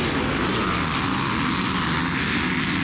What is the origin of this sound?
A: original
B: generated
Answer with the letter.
A